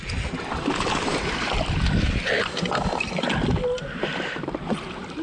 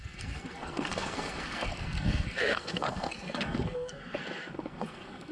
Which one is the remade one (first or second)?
second